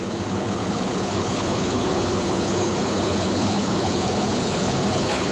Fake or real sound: fake